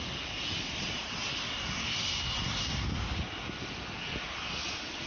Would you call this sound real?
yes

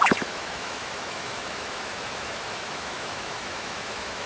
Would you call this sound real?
no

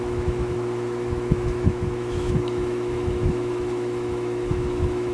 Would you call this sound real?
no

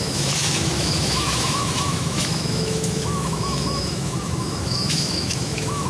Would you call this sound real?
no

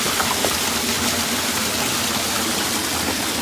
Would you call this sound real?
yes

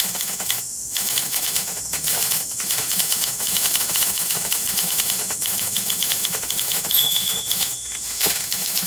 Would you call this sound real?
no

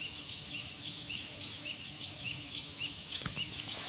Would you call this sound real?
no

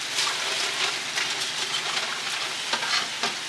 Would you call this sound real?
yes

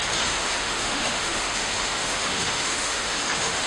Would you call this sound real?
no